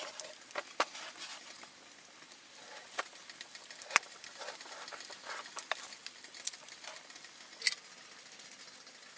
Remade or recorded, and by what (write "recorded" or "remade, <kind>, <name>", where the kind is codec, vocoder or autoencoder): recorded